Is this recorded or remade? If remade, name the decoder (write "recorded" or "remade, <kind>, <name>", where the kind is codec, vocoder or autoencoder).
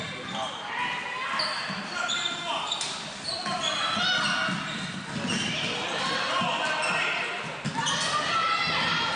recorded